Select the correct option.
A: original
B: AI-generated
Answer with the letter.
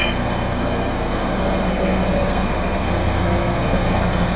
B